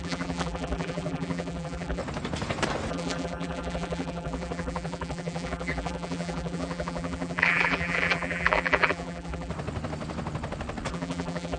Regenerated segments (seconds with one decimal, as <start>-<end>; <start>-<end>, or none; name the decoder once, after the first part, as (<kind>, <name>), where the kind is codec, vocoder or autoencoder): 0.0-2.0 (vocoder, BigVGAN v2); 2.9-9.5; 10.9-11.6